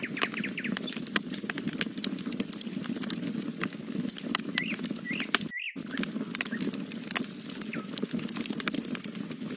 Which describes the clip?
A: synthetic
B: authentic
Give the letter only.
B